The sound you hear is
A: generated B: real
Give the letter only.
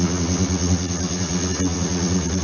A